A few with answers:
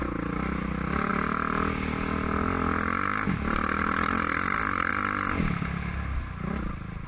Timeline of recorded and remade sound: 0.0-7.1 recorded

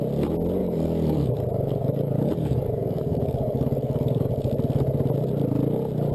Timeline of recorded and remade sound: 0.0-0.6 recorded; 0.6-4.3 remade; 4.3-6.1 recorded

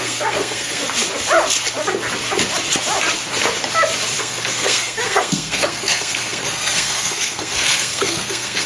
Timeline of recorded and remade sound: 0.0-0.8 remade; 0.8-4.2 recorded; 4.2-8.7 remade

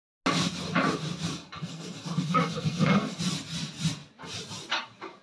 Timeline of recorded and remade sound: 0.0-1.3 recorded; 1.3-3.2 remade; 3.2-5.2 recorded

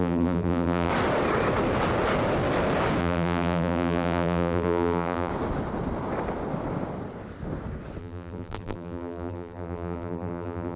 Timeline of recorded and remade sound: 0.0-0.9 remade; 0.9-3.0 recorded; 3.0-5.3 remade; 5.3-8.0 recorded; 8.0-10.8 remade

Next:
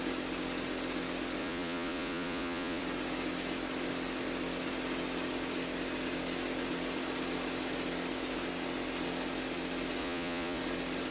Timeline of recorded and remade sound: 0.0-1.4 recorded; 1.4-2.8 remade; 2.8-10.0 recorded; 10.0-10.6 remade; 10.6-11.1 recorded

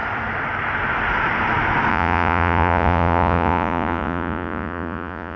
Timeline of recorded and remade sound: 0.0-1.9 recorded; 1.9-5.4 remade

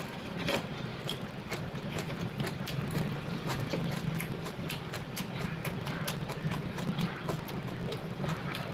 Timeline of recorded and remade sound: 0.0-0.9 recorded; 0.9-4.7 remade; 4.7-8.7 recorded